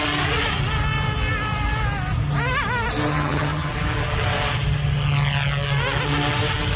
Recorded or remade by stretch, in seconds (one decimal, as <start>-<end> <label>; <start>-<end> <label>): 0.0-3.1 recorded; 3.1-3.7 remade; 3.7-6.8 recorded